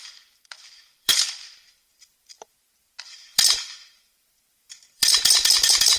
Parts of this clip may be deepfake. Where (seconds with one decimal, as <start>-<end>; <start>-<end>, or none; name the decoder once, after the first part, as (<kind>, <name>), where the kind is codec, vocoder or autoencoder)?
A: 0.0-6.0 (vocoder, BigVGAN v2)